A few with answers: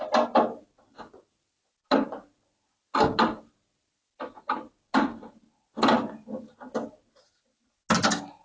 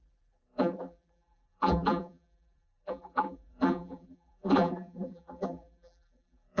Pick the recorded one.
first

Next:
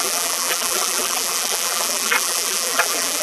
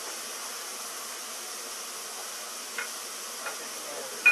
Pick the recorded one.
second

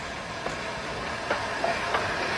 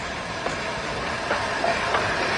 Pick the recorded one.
first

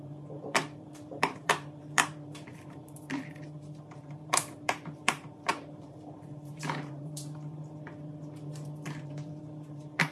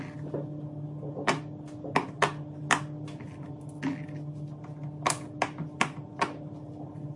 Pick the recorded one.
second